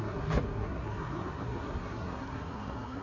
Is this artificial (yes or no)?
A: yes